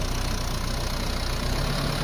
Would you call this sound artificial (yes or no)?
no